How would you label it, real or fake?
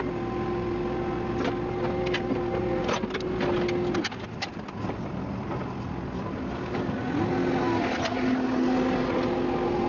real